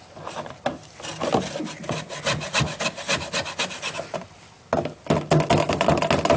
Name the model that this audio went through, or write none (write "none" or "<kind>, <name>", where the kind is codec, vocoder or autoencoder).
none